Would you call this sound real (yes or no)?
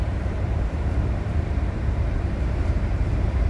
no